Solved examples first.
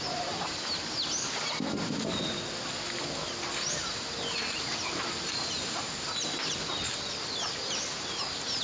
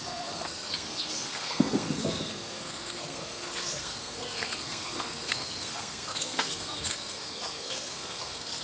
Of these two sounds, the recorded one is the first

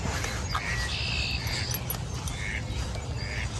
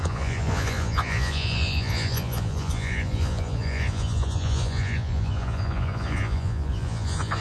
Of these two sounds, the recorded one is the first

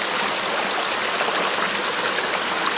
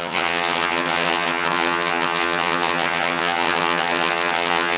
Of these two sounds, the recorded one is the first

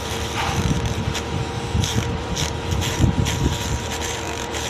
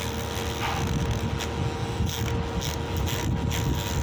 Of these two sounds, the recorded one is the second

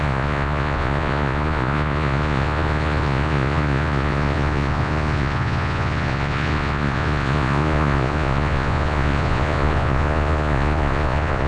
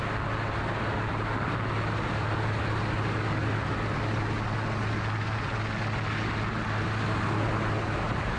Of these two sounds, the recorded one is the second